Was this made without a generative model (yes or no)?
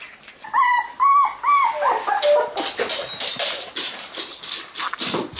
yes